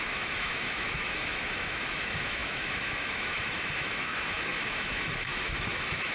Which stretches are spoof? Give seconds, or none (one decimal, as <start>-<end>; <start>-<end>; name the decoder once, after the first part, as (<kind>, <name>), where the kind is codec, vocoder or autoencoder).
0.0-6.1 (autoencoder, DAC-VAE)